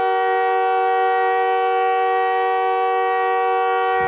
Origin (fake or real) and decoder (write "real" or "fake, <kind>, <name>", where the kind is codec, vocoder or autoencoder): real